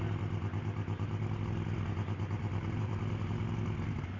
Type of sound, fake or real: real